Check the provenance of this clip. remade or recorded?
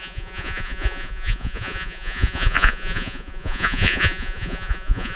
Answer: remade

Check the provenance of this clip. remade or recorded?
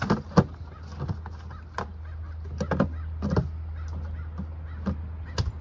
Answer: recorded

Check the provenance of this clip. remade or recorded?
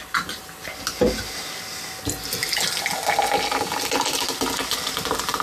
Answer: recorded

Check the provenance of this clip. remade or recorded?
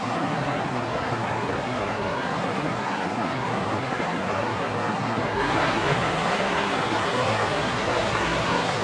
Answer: remade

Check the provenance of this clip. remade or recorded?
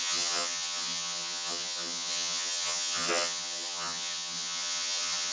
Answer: remade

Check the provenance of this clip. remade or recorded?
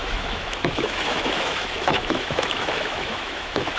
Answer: remade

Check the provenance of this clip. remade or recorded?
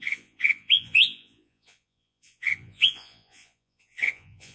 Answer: remade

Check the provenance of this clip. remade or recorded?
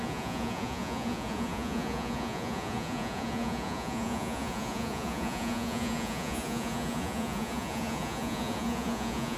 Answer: remade